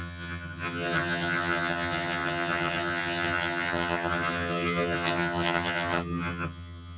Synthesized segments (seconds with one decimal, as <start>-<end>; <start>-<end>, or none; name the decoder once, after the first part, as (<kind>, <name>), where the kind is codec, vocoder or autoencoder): 0.0-7.0 (vocoder, HiFi-GAN)